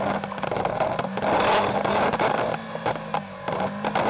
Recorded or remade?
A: recorded